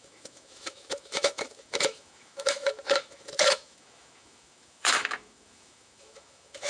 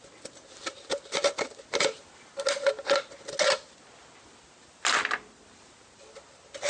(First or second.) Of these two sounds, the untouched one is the second